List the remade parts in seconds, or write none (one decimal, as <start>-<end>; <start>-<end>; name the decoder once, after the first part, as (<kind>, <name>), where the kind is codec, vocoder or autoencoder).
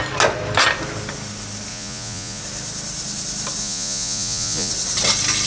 1.7-2.4 (vocoder, Vocos); 3.6-4.7